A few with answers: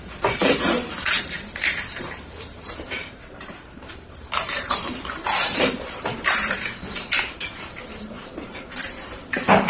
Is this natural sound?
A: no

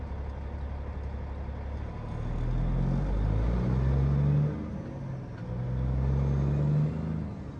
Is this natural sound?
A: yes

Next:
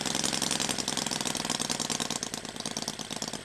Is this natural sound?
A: yes